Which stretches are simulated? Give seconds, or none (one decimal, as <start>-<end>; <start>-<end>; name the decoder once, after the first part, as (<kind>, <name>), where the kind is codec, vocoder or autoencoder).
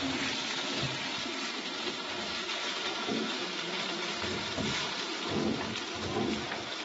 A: 1.1-5.2 (vocoder, BigVGAN v2)